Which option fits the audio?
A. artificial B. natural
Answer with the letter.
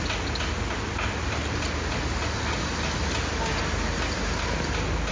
B